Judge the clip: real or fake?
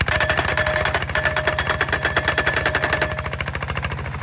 real